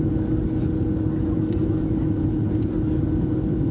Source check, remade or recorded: recorded